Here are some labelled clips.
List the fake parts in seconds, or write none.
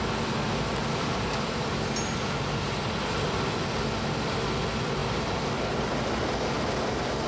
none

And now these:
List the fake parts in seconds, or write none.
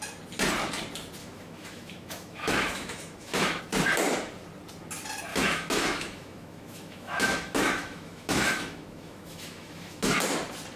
1.2-3.6 (autoencoder, DAC-VAE); 5.3-10.2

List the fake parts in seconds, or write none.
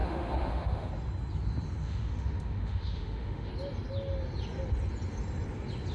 0.0-0.9 (autoencoder, DAC-VAE); 1.8-3.5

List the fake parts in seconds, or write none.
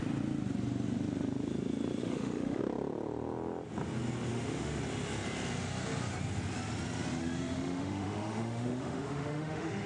2.0-2.6 (autoencoder, DAC-VAE); 4.3-4.8; 7.2-9.9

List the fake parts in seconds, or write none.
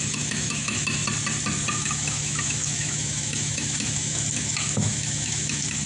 0.0-1.0 (autoencoder, DAC-VAE); 1.7-5.9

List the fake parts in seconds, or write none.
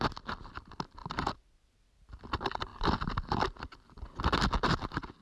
none